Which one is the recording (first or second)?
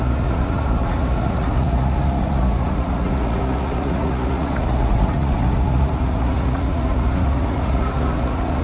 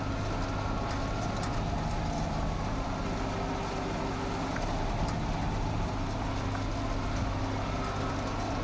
second